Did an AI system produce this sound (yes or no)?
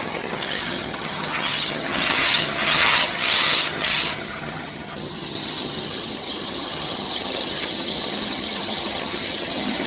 yes